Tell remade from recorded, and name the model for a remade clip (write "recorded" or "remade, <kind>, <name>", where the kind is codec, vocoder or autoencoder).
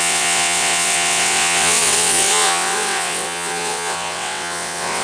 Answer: remade, vocoder, WaveNeXt